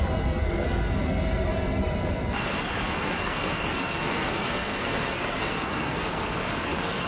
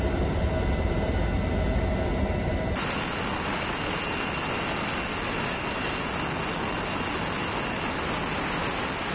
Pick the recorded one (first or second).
second